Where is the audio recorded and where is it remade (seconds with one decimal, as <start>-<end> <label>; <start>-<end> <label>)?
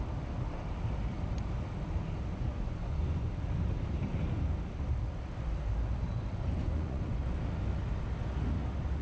0.0-2.3 recorded; 2.3-3.3 remade; 3.3-6.6 recorded; 6.6-7.2 remade; 7.2-9.0 recorded